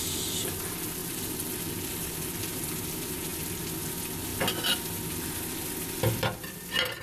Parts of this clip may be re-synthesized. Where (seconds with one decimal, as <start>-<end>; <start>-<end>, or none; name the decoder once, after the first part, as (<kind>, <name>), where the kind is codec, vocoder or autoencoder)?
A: 1.0-2.1 (vocoder, BigVGAN v2)